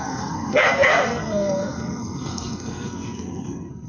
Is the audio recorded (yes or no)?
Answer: no